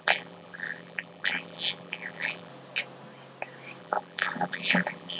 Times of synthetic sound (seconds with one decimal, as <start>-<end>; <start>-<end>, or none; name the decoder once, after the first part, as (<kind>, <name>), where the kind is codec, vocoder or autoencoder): 0.0-2.5 (vocoder, BigVGAN v2); 3.8-5.2